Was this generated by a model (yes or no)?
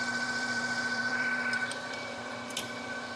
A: yes